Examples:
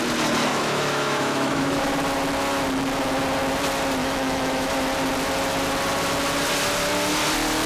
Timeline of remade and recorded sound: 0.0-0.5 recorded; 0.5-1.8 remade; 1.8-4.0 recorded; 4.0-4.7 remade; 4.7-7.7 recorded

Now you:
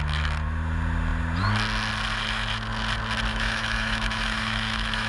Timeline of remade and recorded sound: 0.0-3.3 recorded; 3.3-5.1 remade